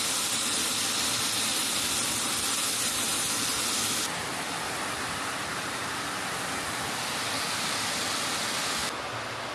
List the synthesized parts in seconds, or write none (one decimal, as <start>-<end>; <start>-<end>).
none